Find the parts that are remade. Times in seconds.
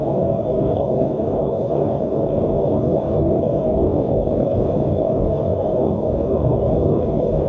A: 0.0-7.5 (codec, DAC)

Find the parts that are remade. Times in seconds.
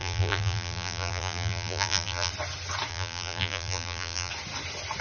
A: 0.0-2.3 (vocoder, BigVGAN v2); 2.9-4.3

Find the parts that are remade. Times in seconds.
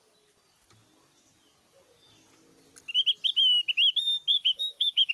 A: 4.3-5.1 (autoencoder, DAC-VAE)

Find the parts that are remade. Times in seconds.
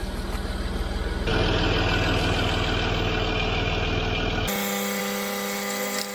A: none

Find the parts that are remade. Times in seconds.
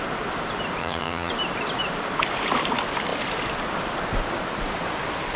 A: 0.8-1.3 (vocoder, HiFi-GAN)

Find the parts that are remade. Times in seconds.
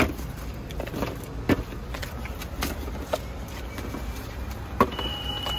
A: none